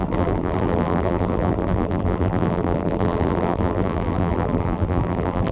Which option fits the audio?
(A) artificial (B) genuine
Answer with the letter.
A